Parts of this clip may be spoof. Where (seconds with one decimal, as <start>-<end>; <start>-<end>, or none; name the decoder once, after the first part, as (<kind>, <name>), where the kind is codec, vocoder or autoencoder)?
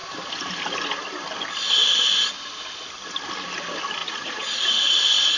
4.0-4.5 (vocoder, Vocos)